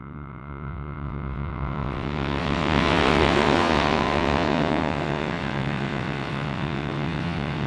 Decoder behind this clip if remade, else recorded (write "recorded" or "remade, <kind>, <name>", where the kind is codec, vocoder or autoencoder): remade, vocoder, WaveNeXt